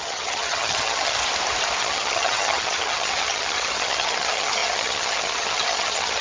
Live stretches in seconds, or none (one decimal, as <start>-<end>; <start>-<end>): 1.2-1.8